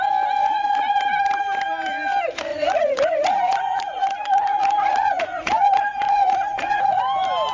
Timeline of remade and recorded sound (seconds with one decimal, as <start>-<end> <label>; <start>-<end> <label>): 0.0-0.4 recorded; 0.4-1.0 remade; 1.0-2.5 recorded; 2.5-7.0 remade; 7.0-7.5 recorded